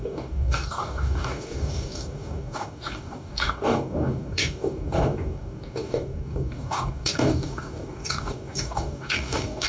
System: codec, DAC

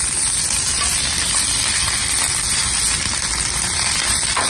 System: none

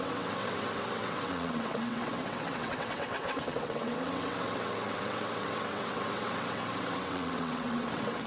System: vocoder, WaveNeXt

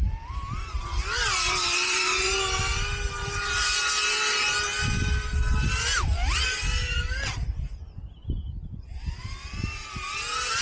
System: none